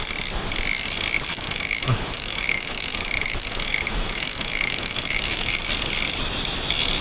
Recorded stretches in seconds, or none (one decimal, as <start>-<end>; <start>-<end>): 0.0-1.3; 5.5-7.0